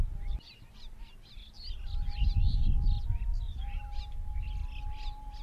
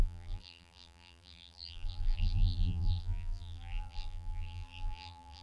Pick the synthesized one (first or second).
second